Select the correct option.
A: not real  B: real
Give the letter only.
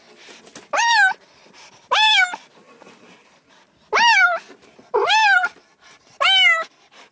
B